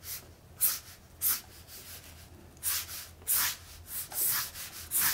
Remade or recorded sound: recorded